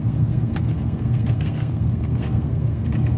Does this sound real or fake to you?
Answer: fake